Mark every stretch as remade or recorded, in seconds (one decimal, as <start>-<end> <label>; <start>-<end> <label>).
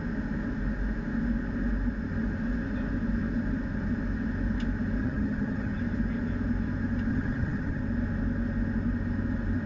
0.0-5.0 recorded; 5.0-5.8 remade; 5.8-7.1 recorded; 7.1-7.8 remade; 7.8-9.7 recorded